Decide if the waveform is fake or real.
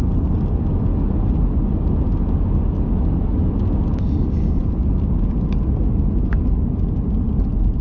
real